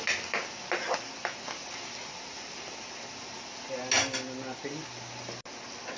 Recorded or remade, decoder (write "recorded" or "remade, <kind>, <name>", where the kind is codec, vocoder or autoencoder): recorded